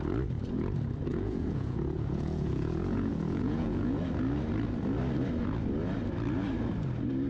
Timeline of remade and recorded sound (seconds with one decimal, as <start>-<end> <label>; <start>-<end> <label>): 0.0-1.1 recorded; 1.1-4.0 remade; 4.0-7.3 recorded